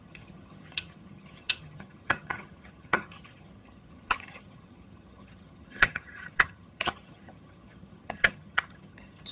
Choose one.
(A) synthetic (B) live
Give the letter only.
A